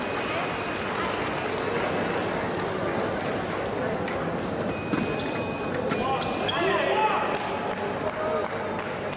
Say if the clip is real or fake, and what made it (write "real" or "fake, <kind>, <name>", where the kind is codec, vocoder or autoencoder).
real